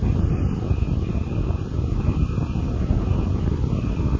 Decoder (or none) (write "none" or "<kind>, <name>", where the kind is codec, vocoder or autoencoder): none